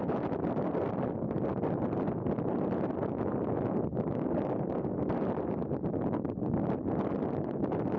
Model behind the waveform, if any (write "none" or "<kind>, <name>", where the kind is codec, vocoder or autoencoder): vocoder, BigVGAN v2